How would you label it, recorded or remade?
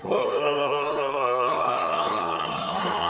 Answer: remade